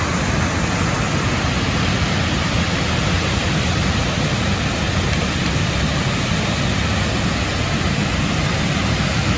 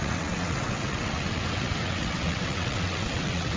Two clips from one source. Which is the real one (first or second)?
first